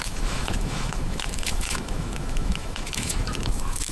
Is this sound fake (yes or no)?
yes